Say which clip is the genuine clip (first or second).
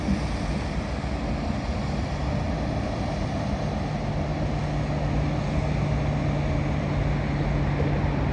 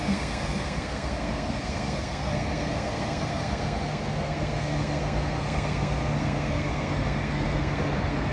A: first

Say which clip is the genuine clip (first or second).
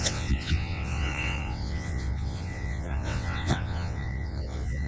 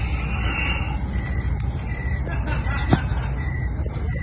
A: second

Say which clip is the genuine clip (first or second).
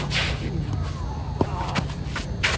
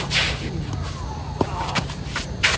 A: first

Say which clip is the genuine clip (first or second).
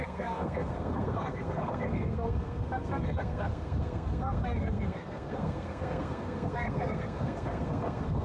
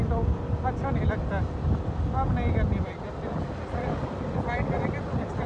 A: second